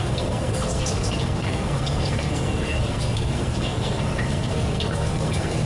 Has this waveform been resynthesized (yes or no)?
yes